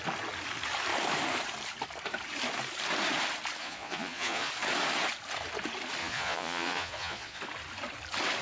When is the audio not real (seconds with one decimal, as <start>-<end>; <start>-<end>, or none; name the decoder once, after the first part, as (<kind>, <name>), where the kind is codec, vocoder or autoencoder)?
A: 3.6-4.5 (vocoder, Vocos); 6.0-7.4